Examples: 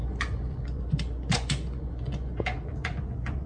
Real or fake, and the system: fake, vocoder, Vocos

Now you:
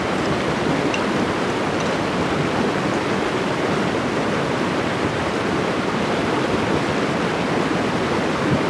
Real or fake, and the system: real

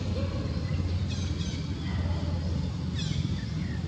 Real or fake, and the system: real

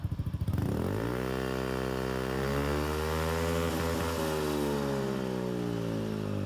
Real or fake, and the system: real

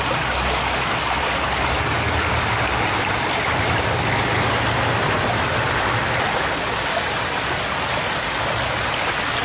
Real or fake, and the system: real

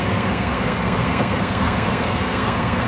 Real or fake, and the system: fake, codec, SNAC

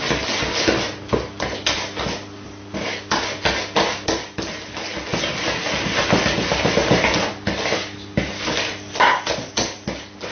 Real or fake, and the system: real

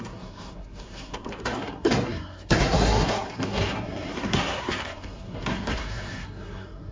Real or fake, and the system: fake, codec, SNAC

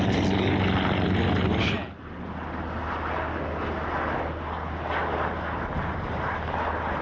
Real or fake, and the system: real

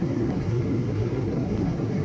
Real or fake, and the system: fake, codec, SNAC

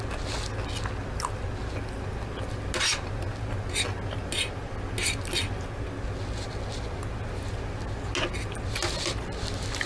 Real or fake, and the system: real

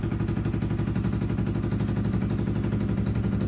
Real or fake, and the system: real